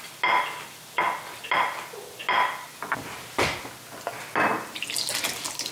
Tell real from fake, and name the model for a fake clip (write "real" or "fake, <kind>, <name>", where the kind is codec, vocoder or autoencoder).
real